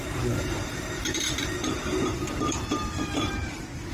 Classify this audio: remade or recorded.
remade